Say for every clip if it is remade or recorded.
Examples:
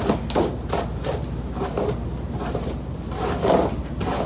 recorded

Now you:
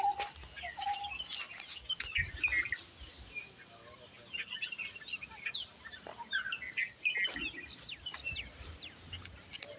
recorded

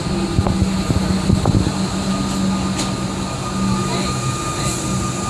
recorded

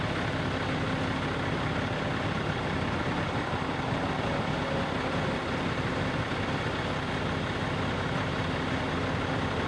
recorded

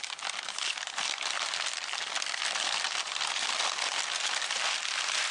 recorded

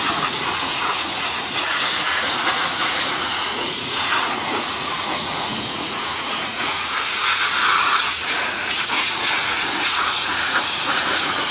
remade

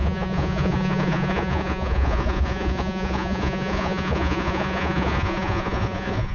remade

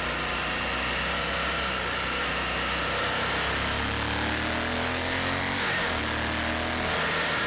recorded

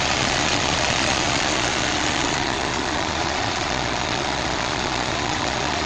remade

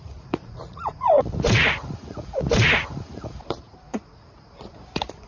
remade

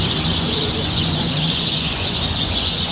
remade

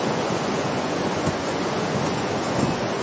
remade